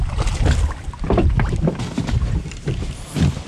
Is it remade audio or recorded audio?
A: recorded